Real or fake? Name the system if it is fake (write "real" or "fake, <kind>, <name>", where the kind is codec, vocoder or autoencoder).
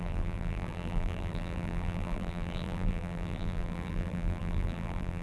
fake, vocoder, BigVGAN v2